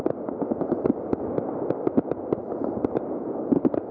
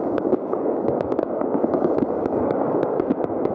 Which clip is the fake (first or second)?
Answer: second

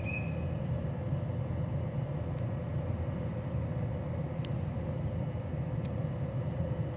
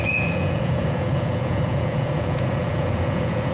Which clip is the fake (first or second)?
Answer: second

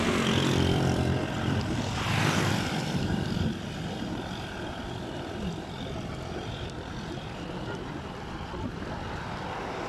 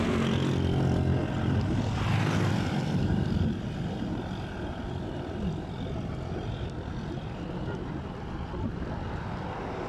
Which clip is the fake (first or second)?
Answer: first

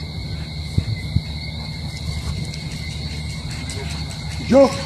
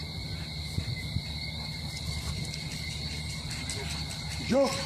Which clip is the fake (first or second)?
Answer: second